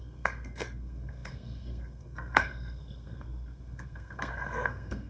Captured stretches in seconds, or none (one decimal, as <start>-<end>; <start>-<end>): none